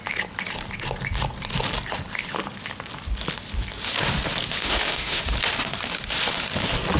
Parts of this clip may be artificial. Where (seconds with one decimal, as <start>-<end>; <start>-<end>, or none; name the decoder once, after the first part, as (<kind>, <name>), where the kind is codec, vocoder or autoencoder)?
4.6-5.2 (autoencoder, DAC-VAE)